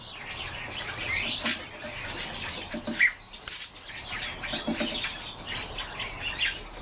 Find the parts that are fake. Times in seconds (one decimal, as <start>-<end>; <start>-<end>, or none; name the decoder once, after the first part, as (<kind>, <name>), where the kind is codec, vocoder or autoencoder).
none

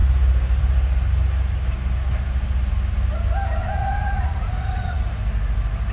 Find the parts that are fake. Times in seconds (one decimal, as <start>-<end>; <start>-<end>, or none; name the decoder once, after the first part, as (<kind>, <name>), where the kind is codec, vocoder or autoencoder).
3.6-5.0 (vocoder, Vocos)